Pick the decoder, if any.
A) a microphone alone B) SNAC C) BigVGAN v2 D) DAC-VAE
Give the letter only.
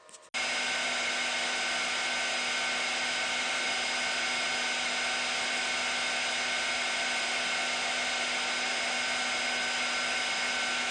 A